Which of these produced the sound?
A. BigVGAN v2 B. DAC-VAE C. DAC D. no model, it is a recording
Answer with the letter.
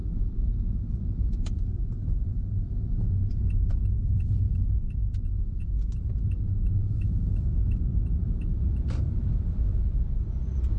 A